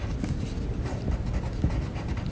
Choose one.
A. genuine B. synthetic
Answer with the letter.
A